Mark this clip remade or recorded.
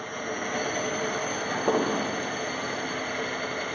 recorded